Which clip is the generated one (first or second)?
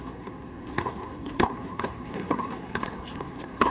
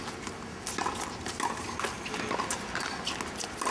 first